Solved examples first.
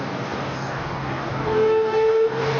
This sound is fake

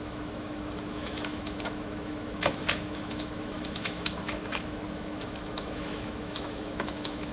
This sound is fake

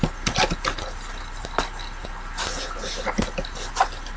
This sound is real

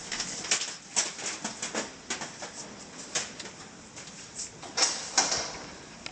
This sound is real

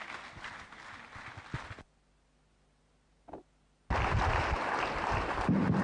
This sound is real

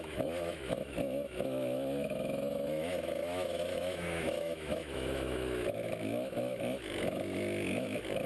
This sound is fake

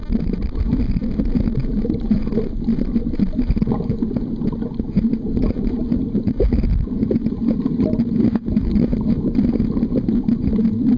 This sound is real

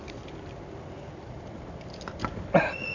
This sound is real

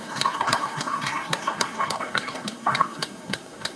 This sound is fake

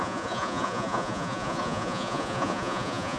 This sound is fake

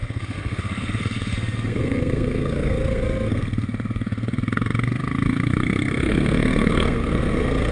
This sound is fake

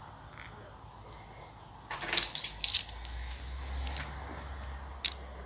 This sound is real